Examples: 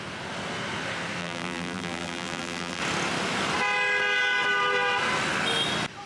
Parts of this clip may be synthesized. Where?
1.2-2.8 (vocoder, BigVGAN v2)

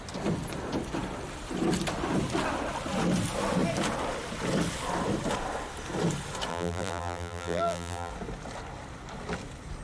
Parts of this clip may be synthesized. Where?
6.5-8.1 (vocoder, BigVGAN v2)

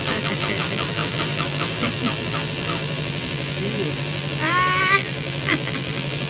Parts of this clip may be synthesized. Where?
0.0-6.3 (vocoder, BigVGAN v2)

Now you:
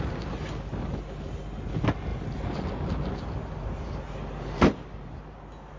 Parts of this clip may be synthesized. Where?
none

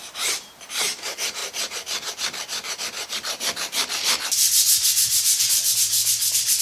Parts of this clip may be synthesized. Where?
0.0-1.4 (vocoder, BigVGAN v2); 5.4-6.0

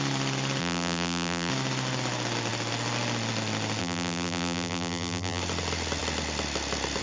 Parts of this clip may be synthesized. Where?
0.6-1.5 (vocoder, BigVGAN v2); 3.8-5.4